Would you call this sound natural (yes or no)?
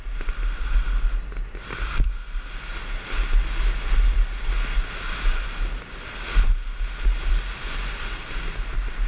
yes